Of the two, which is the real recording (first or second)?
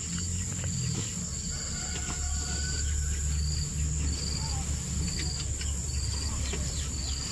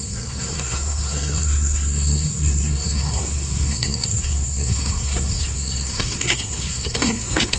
first